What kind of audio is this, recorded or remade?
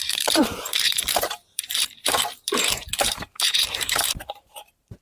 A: remade